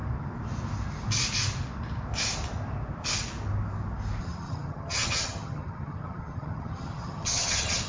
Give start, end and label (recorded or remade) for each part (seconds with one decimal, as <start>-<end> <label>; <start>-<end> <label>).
0.0-4.2 recorded; 4.2-7.9 remade